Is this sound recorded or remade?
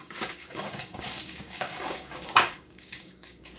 remade